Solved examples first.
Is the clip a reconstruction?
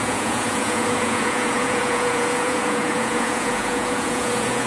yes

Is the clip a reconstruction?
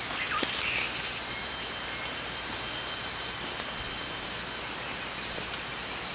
no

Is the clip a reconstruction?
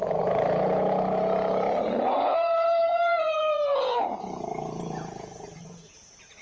yes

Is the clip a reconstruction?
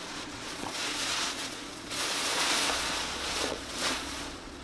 yes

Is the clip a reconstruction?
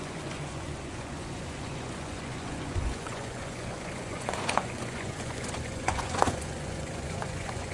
yes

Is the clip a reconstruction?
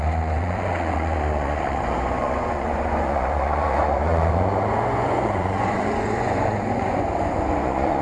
yes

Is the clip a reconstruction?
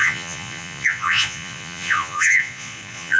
yes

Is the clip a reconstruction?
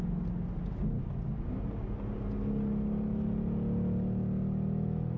no